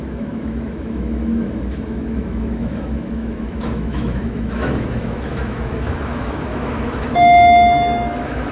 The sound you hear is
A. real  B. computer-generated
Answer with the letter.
B